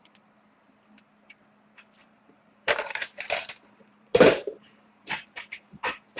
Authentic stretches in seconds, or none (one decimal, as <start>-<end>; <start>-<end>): 0.0-2.0; 5.7-6.2